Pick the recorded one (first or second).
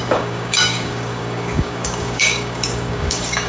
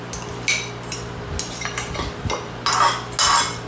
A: second